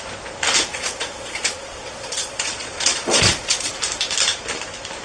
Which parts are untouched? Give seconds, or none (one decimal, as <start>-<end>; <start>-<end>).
0.0-0.7; 3.7-5.0

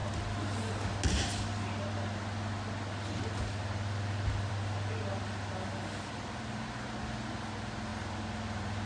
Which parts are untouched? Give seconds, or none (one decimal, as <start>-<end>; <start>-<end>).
0.0-8.9

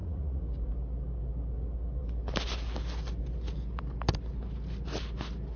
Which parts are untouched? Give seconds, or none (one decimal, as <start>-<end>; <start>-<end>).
0.5-5.6

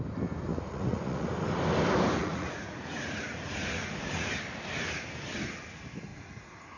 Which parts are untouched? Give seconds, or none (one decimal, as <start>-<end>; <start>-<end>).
0.0-0.5; 1.3-2.2; 4.3-6.1

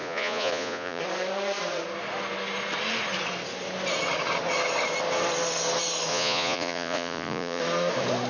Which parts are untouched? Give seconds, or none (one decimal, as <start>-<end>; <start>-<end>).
1.0-6.1; 7.6-8.3

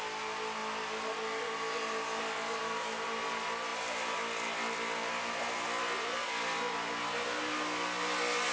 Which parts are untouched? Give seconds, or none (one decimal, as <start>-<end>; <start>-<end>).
0.0-8.5